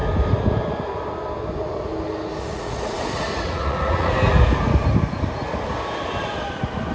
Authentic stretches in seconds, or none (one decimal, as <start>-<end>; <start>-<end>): 0.0-2.5; 4.1-6.9